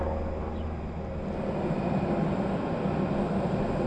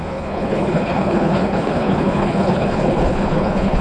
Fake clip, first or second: second